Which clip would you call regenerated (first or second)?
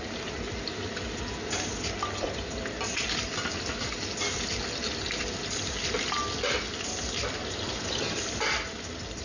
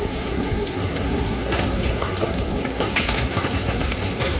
second